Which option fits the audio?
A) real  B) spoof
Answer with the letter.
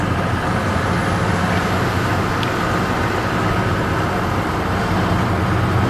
A